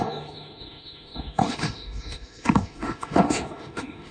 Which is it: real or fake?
fake